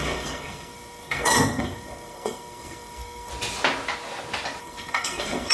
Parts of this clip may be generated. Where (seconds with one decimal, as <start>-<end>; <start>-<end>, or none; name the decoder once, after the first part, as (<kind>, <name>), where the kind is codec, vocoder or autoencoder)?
0.0-3.3 (codec, SNAC); 4.6-5.5

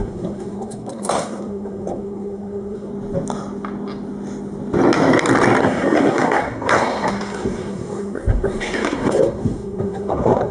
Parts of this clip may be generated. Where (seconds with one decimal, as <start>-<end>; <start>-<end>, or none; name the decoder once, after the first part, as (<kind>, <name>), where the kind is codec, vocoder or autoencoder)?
0.0-2.9 (codec, SNAC); 5.6-10.5

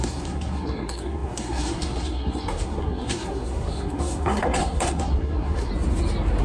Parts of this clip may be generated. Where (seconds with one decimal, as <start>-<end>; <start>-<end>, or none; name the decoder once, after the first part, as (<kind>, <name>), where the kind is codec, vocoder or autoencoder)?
0.0-5.7 (codec, SNAC)

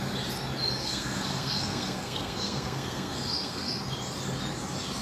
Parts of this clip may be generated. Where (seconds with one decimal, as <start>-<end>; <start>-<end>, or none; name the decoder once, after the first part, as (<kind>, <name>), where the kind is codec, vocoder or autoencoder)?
0.8-3.8 (codec, SNAC)

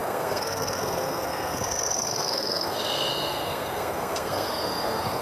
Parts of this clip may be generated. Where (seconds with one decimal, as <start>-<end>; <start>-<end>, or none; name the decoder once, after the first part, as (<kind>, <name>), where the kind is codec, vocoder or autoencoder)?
0.0-5.2 (codec, SNAC)

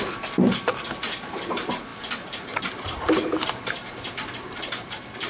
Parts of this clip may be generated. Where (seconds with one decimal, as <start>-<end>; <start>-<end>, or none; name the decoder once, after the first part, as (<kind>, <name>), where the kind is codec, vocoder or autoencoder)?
none

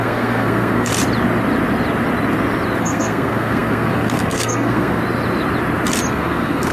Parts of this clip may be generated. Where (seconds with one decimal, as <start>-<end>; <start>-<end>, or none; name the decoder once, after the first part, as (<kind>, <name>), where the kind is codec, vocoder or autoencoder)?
0.0-0.9 (codec, SNAC); 2.8-5.0; 6.1-6.7

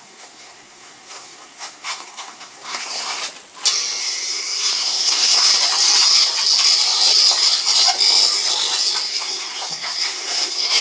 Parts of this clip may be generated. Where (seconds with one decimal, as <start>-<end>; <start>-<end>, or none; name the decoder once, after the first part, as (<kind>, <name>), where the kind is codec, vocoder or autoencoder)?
0.0-3.2 (codec, SNAC); 4.0-5.5; 9.1-10.8